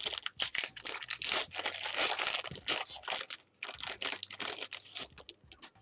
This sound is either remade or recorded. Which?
recorded